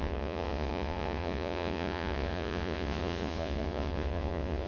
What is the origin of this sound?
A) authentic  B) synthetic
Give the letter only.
B